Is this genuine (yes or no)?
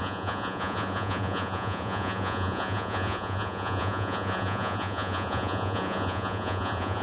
no